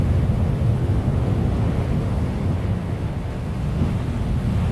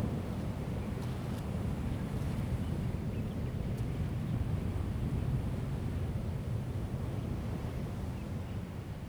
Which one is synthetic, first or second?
first